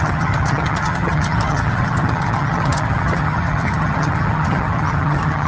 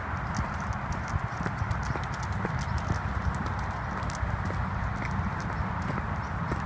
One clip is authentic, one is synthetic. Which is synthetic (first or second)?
first